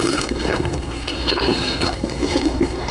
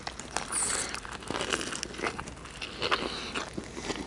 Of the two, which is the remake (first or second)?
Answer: first